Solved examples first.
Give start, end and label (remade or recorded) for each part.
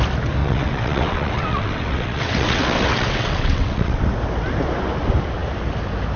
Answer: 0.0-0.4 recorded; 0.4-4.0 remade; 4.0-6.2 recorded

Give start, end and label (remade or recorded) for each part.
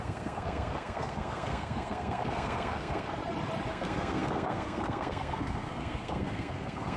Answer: 0.0-3.2 remade; 3.2-3.7 recorded; 3.7-7.0 remade